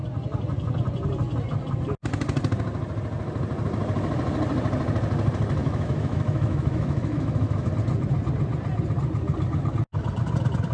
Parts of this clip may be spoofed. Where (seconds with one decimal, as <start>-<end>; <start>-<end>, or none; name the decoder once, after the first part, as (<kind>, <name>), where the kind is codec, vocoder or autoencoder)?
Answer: 5.6-7.7 (autoencoder, DAC-VAE)